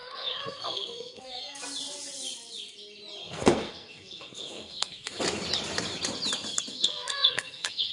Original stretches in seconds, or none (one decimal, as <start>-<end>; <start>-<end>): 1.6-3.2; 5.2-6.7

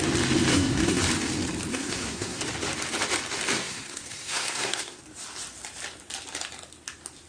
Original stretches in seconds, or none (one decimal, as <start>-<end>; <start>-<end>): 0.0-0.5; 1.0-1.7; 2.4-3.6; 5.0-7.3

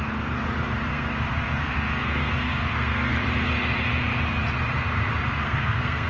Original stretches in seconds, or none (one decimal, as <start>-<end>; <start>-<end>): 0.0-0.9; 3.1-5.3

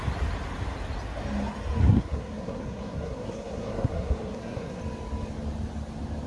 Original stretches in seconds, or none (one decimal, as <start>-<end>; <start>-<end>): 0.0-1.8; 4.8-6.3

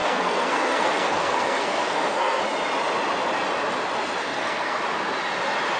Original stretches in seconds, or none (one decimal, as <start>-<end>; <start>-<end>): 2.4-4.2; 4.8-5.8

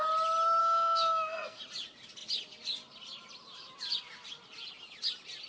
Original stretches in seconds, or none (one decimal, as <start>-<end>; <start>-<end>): 0.0-0.6; 1.6-5.5

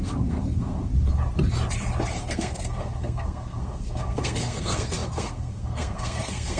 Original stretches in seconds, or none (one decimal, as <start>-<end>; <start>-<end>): 0.9-2.2